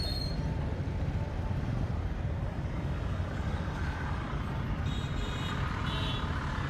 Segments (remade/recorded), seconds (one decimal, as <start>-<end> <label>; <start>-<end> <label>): 0.0-2.4 recorded; 2.4-4.4 remade; 4.4-6.7 recorded